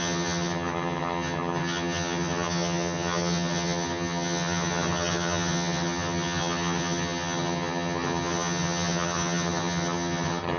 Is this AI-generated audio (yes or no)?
yes